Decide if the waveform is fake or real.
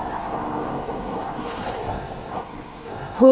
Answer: fake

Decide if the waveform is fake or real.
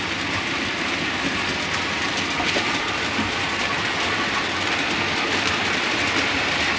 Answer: real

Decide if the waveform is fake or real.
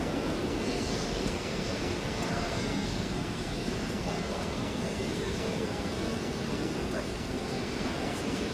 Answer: fake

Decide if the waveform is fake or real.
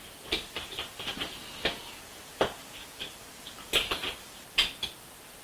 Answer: real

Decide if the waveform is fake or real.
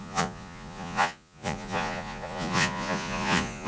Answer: fake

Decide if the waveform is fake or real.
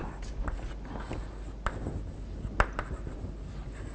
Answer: real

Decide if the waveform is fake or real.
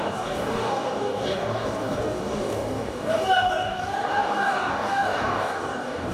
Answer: fake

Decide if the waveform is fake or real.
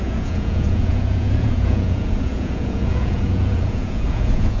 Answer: fake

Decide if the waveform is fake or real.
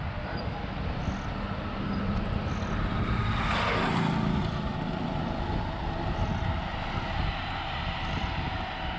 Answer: real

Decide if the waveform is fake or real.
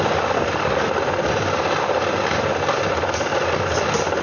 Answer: real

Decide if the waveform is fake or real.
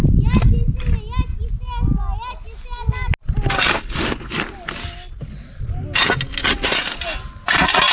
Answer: real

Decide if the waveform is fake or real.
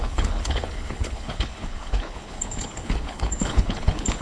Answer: fake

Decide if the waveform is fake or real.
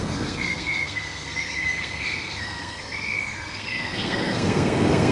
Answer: fake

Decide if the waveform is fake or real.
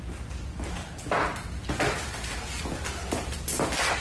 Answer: real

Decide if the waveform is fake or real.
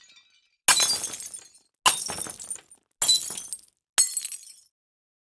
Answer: real